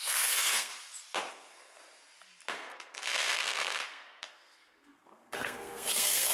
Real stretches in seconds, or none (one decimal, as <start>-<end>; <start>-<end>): 0.7-1.3; 1.8-2.5